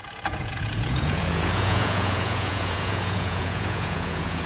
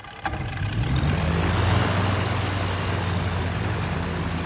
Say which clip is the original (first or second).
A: second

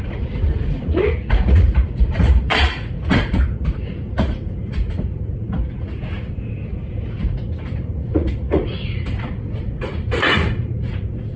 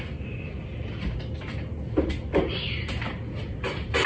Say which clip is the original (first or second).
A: second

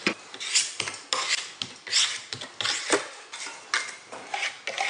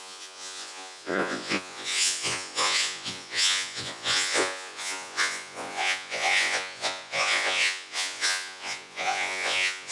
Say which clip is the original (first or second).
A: first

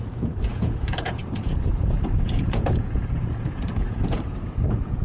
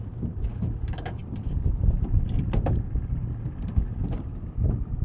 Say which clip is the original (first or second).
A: second